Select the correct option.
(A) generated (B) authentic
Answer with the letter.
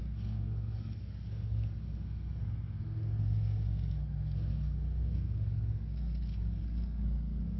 A